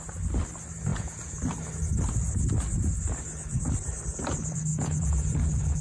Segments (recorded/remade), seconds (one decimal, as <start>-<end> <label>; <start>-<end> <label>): 0.0-0.9 recorded; 0.9-1.4 remade; 1.4-4.7 recorded; 4.7-5.8 remade